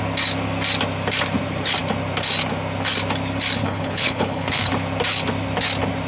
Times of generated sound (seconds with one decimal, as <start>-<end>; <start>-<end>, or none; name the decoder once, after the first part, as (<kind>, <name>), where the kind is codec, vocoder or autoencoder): 3.6-4.7 (codec, HILCodec)